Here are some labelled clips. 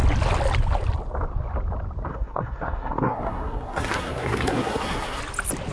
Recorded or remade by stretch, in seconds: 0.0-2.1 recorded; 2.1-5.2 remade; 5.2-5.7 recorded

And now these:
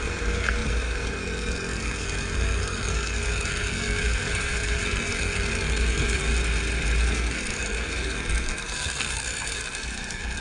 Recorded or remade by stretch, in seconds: 0.0-6.3 remade; 6.3-7.0 recorded; 7.0-10.4 remade

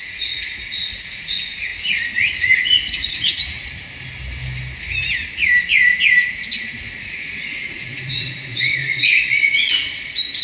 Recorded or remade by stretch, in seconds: 0.0-1.7 remade; 1.7-2.6 recorded; 2.6-3.7 remade; 3.7-6.6 recorded; 6.6-10.4 remade

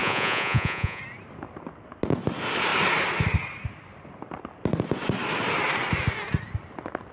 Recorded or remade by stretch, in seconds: 0.0-1.0 remade; 1.0-7.1 recorded

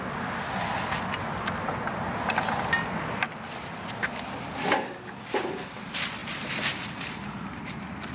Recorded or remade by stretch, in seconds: 0.0-6.2 recorded; 6.2-7.3 remade; 7.3-8.1 recorded